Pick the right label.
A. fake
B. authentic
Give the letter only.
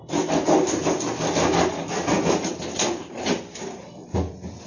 B